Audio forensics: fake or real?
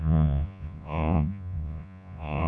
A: fake